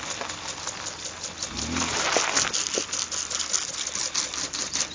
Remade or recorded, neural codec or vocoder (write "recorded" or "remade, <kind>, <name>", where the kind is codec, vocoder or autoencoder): recorded